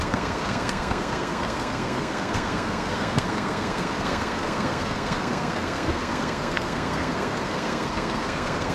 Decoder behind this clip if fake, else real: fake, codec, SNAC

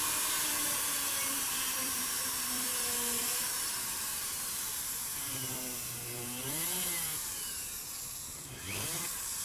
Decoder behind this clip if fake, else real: fake, vocoder, BigVGAN v2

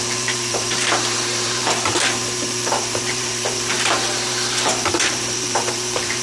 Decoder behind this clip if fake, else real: fake, vocoder, BigVGAN v2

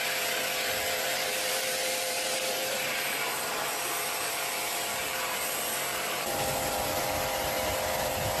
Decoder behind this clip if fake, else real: fake, vocoder, BigVGAN v2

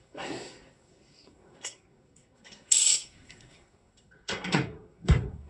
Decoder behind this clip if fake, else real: fake, codec, SNAC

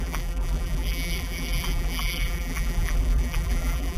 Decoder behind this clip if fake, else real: fake, vocoder, BigVGAN v2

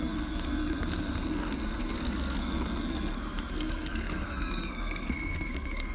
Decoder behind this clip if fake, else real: fake, codec, SNAC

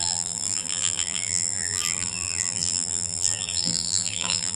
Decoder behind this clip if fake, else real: fake, vocoder, BigVGAN v2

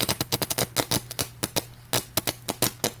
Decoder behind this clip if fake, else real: real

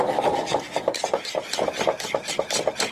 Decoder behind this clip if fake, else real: real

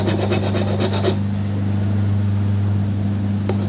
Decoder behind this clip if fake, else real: real